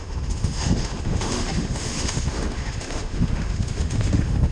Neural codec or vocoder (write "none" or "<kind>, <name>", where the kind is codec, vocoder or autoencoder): autoencoder, DAC-VAE